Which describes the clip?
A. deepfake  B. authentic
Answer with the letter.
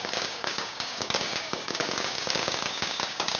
A